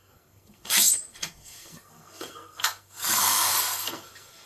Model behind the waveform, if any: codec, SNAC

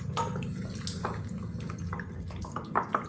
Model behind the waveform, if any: none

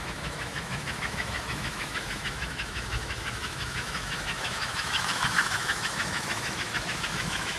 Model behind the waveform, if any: autoencoder, DAC-VAE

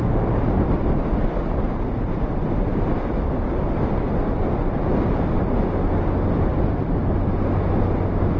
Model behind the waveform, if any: none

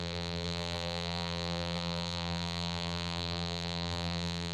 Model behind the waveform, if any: vocoder, BigVGAN v2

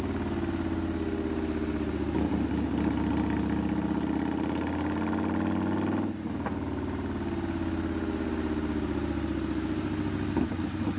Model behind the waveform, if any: none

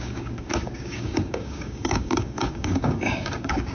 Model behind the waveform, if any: codec, DAC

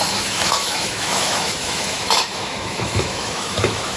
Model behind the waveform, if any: autoencoder, DAC-VAE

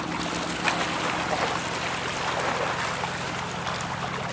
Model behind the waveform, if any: none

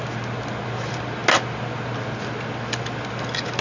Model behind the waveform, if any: none